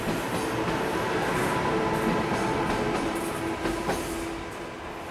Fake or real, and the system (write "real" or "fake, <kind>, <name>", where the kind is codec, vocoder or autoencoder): real